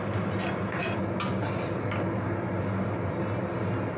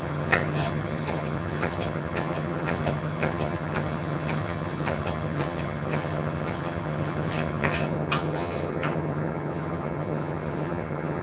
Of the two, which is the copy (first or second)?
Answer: second